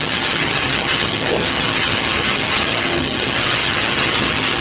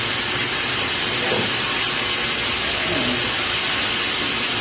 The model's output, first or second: first